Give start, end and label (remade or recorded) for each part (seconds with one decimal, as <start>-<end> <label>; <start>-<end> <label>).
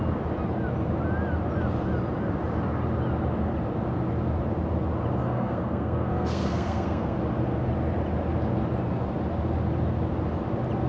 0.0-5.2 recorded; 5.2-7.2 remade; 7.2-10.9 recorded